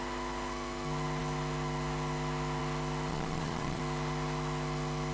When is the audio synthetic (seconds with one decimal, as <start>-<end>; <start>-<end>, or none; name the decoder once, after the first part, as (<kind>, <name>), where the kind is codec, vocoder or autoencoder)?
3.1-3.8 (vocoder, Vocos)

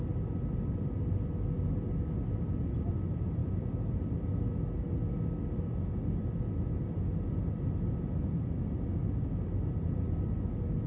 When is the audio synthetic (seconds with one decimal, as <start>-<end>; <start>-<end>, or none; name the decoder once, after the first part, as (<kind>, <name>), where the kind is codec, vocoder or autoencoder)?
none

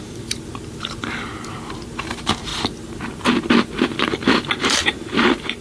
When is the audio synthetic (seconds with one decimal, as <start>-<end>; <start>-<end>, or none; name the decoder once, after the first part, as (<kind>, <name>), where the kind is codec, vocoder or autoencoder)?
0.0-2.5 (vocoder, BigVGAN v2); 4.6-5.6

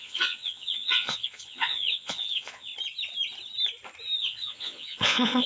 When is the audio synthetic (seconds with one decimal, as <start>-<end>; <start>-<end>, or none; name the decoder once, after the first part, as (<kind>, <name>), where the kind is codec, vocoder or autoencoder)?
0.0-2.7 (vocoder, Vocos); 4.2-5.5

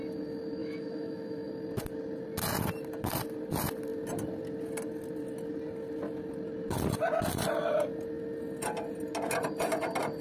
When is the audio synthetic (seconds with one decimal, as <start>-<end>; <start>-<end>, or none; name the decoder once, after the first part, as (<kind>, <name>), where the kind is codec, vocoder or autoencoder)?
0.6-1.5 (autoencoder, DAC-VAE)